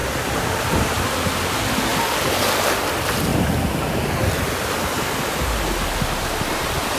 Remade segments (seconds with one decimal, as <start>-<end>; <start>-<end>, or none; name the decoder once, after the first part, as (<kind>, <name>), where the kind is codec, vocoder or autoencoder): 0.0-0.8 (vocoder, BigVGAN v2)